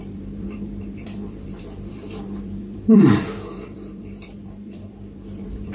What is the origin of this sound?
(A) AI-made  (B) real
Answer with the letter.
A